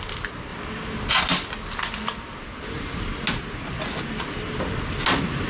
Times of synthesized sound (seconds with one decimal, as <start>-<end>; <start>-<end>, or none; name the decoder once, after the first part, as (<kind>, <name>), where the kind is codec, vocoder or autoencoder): none